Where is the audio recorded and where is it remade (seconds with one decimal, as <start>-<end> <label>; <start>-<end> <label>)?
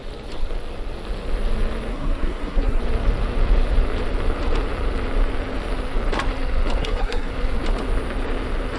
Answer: 0.0-1.9 recorded; 1.9-2.8 remade; 2.8-6.8 recorded; 6.8-7.3 remade; 7.3-8.8 recorded